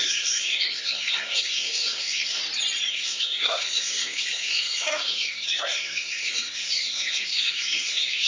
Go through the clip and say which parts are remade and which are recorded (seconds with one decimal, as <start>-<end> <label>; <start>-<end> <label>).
0.0-2.4 remade; 2.4-2.9 recorded; 2.9-8.3 remade